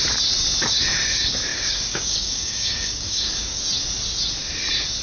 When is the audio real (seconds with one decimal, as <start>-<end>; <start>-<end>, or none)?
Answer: 0.0-1.5; 3.6-5.0